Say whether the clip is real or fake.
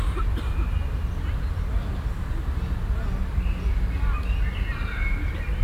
real